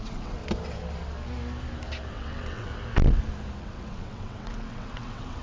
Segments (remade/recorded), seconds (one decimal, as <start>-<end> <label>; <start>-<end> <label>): 0.0-0.4 remade; 0.4-2.1 recorded; 2.1-2.7 remade; 2.7-3.6 recorded; 3.6-5.4 remade